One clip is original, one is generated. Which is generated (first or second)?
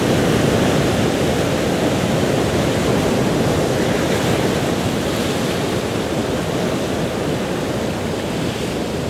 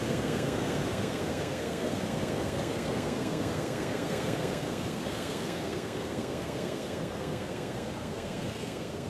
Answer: second